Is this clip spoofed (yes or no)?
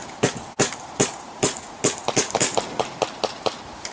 no